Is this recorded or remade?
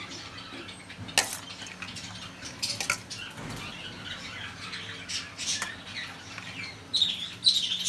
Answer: recorded